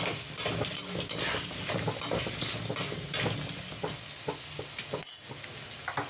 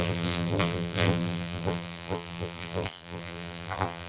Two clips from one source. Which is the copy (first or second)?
second